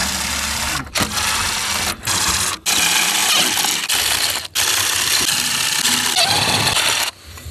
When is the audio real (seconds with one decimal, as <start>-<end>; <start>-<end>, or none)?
0.0-7.5